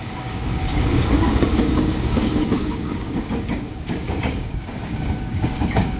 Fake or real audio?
fake